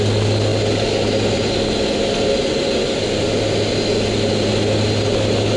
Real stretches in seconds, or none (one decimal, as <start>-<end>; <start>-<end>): 0.0-5.6

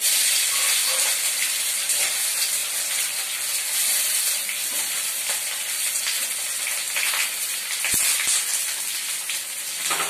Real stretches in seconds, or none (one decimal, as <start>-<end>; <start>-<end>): 0.0-10.1

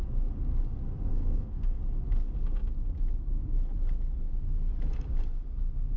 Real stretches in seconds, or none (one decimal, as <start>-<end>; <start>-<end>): 0.0-1.1; 1.8-6.0

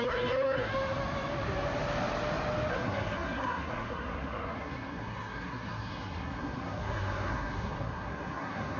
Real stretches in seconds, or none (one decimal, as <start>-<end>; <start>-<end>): 0.7-2.7

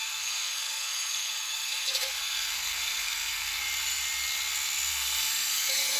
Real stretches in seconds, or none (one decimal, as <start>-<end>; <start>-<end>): 3.6-4.9